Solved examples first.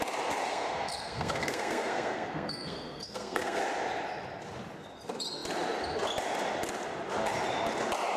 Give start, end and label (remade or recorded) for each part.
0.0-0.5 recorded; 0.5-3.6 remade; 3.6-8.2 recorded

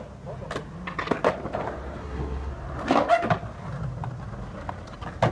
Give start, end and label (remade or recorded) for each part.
0.0-2.0 recorded; 2.0-2.5 remade; 2.5-5.3 recorded